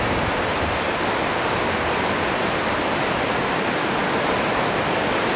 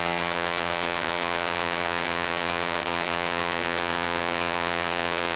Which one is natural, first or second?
first